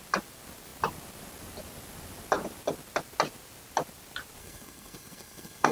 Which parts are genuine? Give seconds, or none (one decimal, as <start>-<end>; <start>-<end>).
0.0-4.4